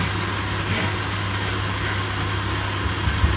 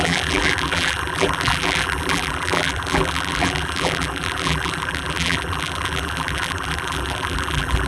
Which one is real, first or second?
first